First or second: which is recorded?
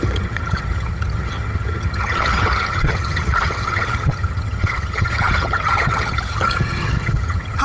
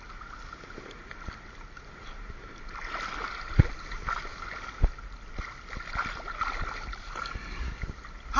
second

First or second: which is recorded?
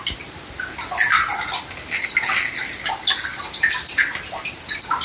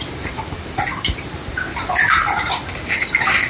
first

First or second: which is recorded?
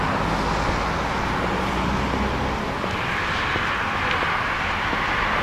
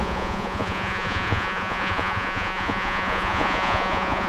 first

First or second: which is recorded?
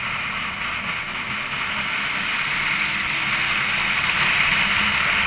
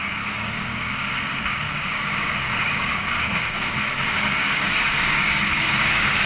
first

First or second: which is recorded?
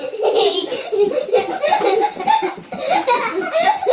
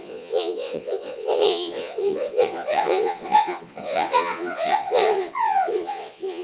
first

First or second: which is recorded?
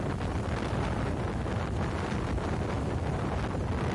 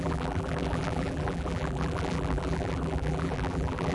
first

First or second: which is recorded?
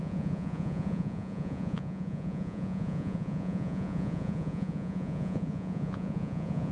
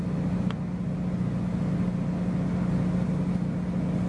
second